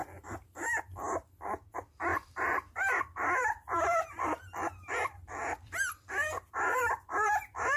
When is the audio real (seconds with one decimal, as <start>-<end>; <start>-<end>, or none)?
0.0-1.7